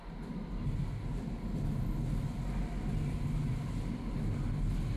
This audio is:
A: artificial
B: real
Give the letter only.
B